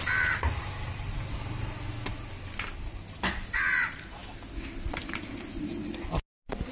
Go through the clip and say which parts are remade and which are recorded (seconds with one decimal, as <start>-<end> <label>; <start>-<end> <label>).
0.0-6.7 recorded